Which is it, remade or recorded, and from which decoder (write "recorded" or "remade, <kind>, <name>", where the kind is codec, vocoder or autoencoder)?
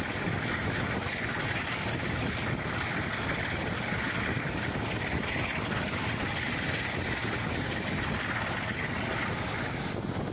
recorded